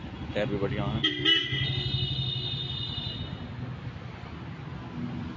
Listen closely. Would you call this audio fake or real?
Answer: real